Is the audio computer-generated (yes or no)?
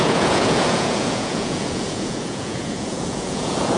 yes